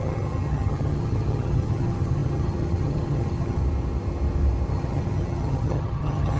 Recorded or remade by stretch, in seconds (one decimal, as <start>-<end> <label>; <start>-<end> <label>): 0.0-3.6 remade; 3.6-4.7 recorded; 4.7-6.4 remade